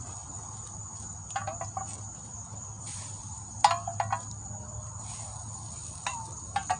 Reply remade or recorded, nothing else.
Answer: recorded